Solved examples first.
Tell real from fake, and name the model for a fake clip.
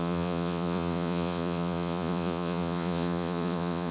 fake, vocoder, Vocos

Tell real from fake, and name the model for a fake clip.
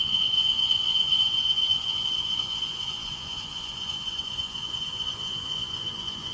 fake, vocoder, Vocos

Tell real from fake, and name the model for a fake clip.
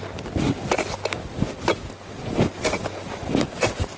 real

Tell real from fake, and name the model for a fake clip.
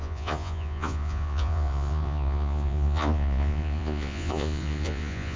fake, vocoder, Vocos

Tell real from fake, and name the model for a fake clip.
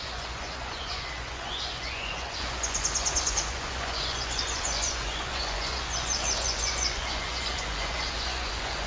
fake, vocoder, Vocos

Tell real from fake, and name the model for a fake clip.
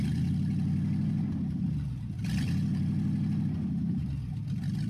real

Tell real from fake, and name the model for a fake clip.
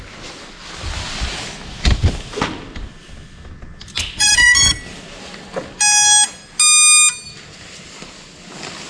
real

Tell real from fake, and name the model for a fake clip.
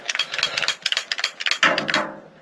real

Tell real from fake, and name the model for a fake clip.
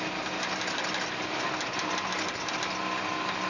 real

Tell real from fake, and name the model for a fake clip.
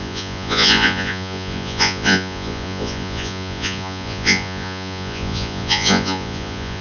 fake, vocoder, Vocos